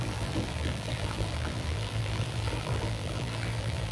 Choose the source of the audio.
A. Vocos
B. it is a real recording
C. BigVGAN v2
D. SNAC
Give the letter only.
C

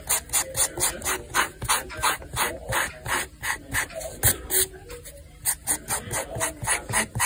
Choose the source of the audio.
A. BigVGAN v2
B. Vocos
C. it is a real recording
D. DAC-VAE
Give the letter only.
C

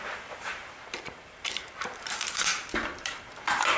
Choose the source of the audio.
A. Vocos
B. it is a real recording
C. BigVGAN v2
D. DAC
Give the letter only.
C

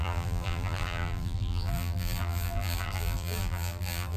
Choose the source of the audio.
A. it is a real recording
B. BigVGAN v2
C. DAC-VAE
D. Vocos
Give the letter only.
B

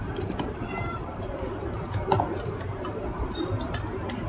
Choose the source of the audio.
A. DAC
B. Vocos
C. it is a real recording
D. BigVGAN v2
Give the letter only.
D